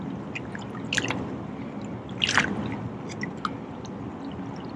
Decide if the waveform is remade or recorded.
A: recorded